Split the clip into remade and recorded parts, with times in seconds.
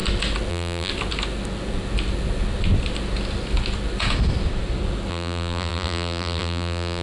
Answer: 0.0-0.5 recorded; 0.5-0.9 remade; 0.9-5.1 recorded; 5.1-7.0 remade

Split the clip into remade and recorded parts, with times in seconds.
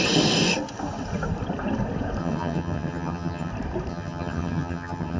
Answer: 0.0-2.2 recorded; 2.2-3.5 remade; 3.5-3.9 recorded; 3.9-5.2 remade